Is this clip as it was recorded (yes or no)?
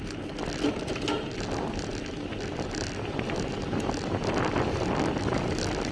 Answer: yes